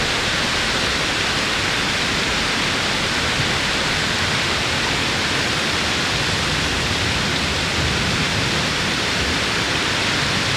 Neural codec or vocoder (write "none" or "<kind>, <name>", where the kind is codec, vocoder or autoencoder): none